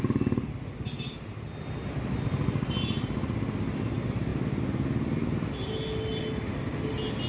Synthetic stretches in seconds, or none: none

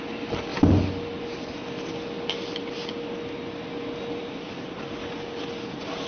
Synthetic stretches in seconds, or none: none

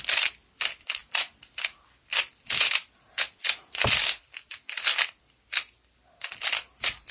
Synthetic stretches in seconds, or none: none

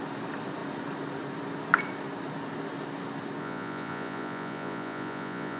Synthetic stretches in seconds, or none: 3.4-5.6 (vocoder, Vocos)

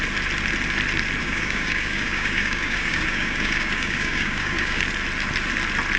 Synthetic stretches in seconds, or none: 1.2-4.8 (codec, DAC)

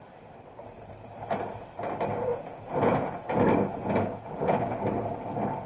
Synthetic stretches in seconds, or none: 2.3-3.2 (vocoder, Vocos); 3.8-4.8

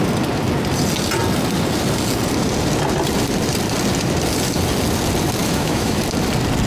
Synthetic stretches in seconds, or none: 5.4-6.0 (autoencoder, DAC-VAE)